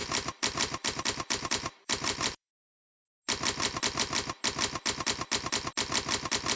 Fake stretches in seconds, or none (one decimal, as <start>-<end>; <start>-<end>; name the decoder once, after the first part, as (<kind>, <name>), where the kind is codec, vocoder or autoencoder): 0.0-2.5 (vocoder, BigVGAN v2)